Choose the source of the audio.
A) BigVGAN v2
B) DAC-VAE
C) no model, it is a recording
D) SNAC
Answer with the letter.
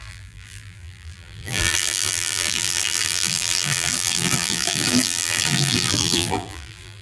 A